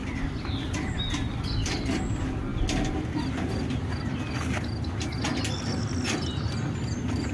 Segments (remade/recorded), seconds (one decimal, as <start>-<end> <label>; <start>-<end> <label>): 0.0-7.3 recorded